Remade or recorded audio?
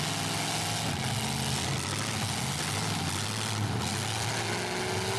recorded